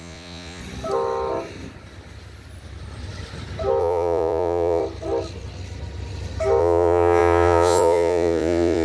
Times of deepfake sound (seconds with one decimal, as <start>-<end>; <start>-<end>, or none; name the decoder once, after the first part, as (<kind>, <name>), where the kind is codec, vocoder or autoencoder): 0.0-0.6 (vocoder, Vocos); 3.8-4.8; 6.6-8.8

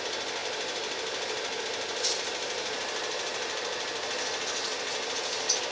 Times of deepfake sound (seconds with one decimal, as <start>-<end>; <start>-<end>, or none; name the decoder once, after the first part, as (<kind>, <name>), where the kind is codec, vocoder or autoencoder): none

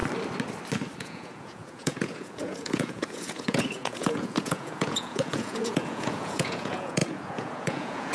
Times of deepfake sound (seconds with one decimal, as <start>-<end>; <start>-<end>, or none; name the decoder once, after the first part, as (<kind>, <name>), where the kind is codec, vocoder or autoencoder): 1.0-8.1 (vocoder, Vocos)

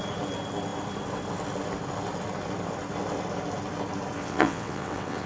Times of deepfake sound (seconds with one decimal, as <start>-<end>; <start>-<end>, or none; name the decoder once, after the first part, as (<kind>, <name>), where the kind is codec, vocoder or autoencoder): 4.2-5.3 (vocoder, WaveNeXt)